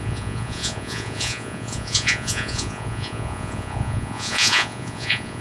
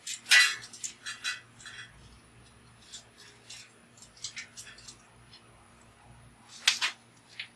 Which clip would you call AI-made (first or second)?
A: first